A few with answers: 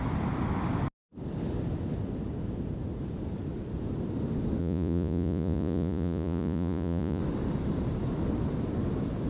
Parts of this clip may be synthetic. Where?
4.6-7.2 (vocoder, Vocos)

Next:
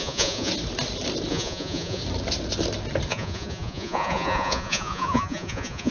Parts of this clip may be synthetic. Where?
0.0-0.5 (vocoder, Vocos); 1.3-2.0; 3.1-5.9

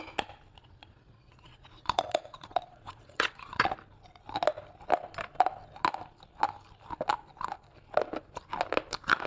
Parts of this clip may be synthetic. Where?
0.5-3.7 (vocoder, Vocos)

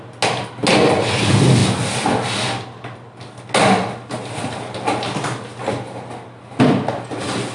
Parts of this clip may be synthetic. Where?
none